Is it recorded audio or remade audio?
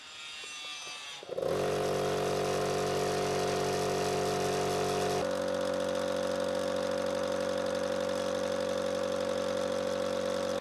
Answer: recorded